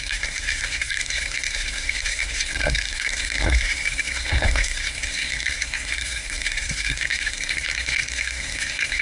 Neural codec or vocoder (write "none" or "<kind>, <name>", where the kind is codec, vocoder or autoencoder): codec, SNAC